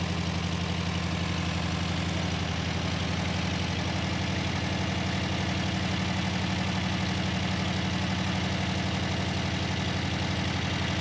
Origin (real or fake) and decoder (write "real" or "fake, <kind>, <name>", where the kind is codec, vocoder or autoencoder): real